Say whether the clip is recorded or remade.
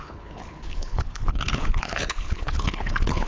remade